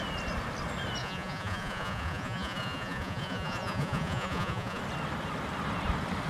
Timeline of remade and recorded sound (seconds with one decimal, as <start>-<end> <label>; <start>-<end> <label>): 0.0-1.0 recorded; 1.0-4.8 remade; 4.8-6.3 recorded

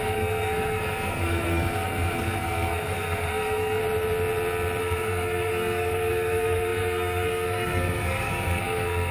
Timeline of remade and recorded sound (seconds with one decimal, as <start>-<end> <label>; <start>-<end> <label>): 0.0-3.8 remade; 3.8-4.8 recorded; 4.8-9.1 remade